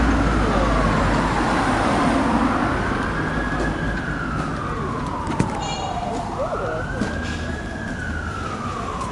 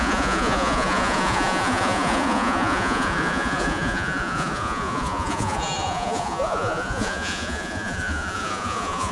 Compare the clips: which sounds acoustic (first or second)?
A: first